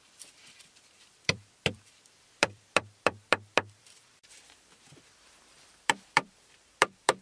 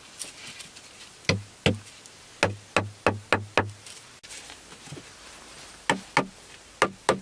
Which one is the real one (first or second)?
second